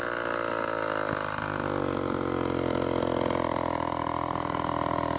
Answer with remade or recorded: recorded